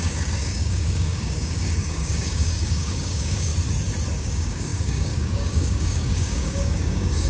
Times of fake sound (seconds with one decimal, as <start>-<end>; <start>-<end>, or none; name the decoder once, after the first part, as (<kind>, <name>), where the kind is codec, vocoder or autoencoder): 0.0-3.5 (codec, DAC); 4.2-7.3